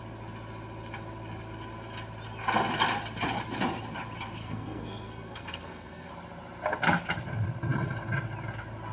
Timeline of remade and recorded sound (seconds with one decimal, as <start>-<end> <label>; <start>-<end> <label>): 0.0-4.4 recorded; 4.4-6.1 remade; 6.1-8.9 recorded